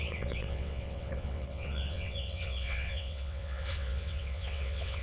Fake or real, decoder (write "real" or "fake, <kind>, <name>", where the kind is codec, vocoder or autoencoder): fake, vocoder, WaveNeXt